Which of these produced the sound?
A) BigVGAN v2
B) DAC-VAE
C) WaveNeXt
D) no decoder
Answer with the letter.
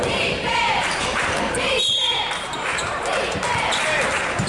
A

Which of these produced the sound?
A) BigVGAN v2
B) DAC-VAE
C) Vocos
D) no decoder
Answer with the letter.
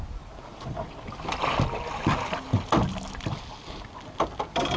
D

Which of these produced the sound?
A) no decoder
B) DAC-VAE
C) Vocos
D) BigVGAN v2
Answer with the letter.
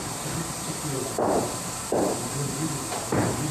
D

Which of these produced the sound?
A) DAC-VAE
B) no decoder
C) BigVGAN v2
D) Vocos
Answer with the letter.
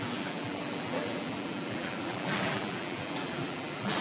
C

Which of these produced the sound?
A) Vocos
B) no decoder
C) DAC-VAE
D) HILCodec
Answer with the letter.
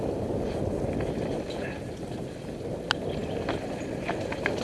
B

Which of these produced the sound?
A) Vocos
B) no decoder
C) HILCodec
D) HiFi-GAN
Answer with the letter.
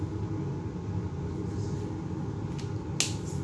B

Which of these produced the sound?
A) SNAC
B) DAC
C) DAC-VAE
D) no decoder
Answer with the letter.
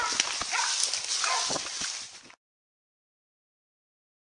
D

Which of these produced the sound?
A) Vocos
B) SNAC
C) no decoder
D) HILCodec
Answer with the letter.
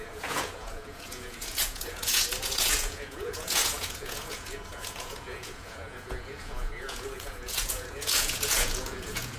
A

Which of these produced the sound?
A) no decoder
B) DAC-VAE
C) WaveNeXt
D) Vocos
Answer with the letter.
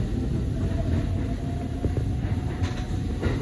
A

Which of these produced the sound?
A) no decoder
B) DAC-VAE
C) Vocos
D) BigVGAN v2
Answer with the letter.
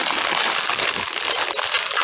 A